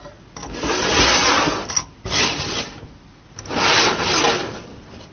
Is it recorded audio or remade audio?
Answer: recorded